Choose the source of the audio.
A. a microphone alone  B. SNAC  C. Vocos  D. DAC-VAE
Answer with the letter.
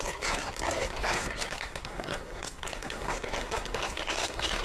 B